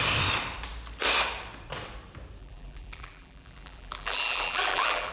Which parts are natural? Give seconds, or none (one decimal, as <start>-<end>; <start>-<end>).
0.0-2.4